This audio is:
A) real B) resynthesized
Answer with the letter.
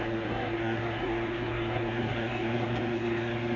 B